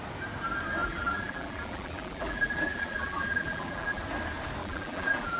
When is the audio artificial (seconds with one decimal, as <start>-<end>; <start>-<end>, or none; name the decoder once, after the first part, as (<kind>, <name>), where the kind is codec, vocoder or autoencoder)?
0.8-4.0 (vocoder, BigVGAN v2); 4.6-5.4